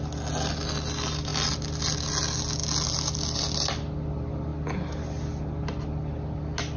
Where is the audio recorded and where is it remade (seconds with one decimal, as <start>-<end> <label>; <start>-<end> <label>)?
0.0-6.8 recorded